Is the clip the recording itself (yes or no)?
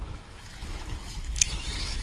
no